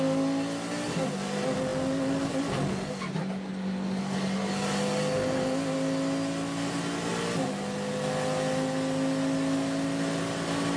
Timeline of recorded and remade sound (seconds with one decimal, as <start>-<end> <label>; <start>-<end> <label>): 0.0-10.8 recorded